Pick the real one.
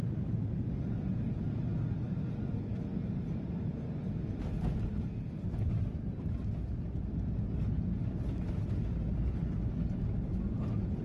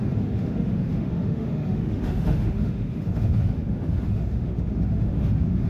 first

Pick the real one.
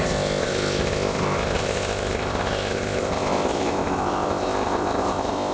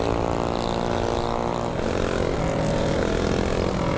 second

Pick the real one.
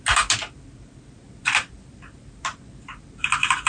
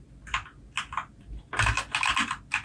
second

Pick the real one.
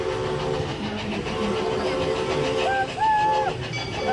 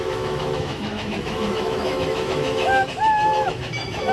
first